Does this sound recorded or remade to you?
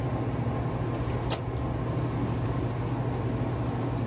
recorded